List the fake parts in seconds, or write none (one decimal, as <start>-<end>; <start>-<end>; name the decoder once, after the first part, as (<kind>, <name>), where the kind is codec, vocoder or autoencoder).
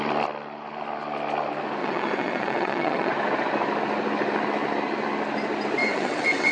1.8-3.1 (vocoder, WaveNeXt); 5.8-6.5